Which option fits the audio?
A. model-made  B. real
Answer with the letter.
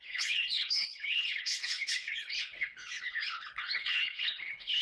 A